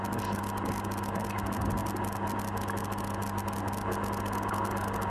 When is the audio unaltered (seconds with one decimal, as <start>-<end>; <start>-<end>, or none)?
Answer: 0.0-5.1